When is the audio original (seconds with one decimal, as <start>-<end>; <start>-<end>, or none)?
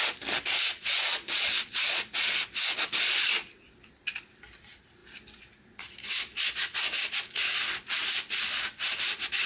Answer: 0.0-0.7; 2.0-9.5